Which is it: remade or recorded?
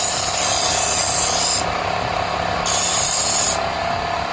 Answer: recorded